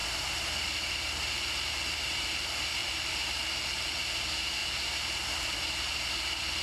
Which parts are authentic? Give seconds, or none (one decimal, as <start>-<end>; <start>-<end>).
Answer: 0.0-2.8; 3.8-4.6; 5.2-6.6